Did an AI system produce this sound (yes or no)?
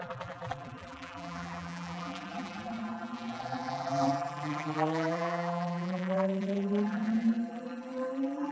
yes